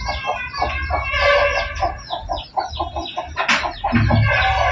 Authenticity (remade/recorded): recorded